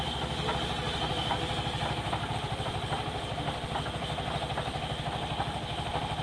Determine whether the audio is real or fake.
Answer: real